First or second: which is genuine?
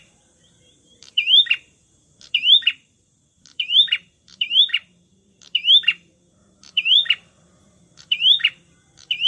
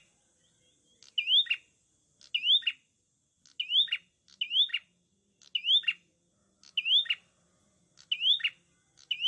second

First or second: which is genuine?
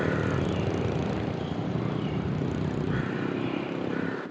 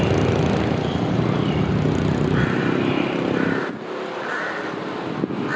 second